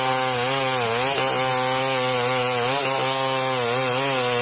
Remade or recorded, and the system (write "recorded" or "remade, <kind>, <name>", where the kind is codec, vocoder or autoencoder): recorded